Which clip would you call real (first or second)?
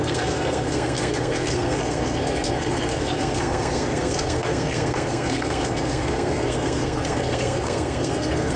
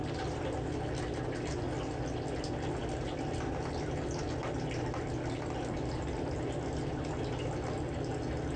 second